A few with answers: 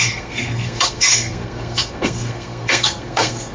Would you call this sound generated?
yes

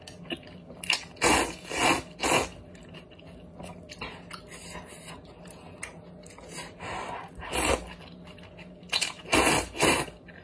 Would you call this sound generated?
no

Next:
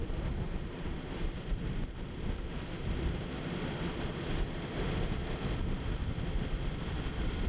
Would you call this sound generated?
no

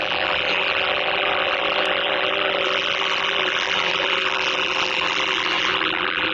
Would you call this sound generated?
yes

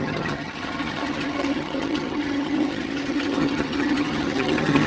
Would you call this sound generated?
yes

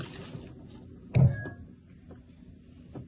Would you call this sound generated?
no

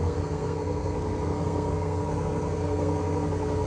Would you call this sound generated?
yes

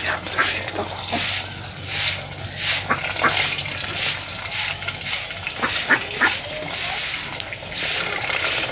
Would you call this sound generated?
no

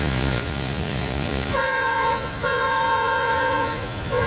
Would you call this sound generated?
yes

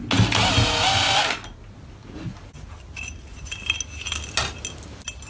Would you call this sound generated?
no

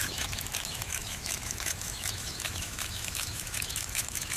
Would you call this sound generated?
yes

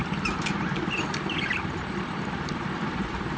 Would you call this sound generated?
no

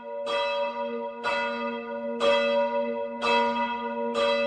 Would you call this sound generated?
no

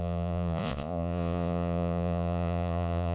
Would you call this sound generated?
yes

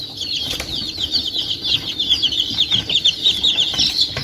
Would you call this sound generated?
no